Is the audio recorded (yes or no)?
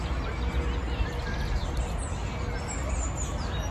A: yes